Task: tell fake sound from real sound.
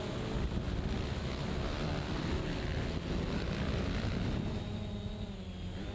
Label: real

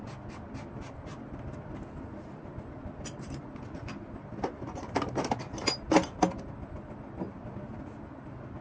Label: real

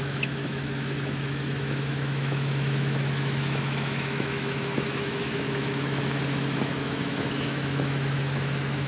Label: fake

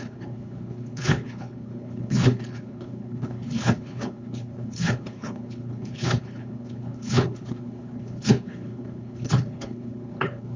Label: fake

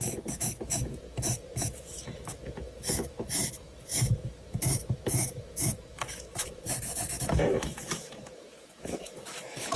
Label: fake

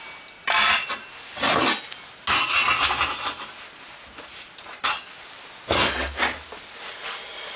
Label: real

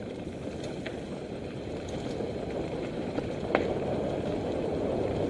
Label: real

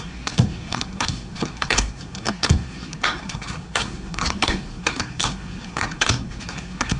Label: fake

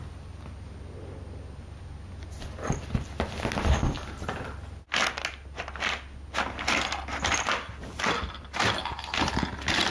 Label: real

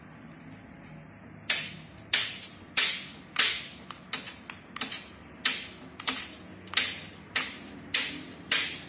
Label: real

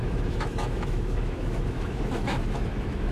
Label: fake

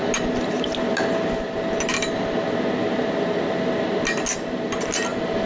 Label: real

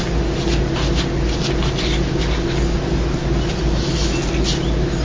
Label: real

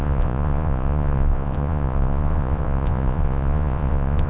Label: fake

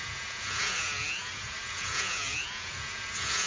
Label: fake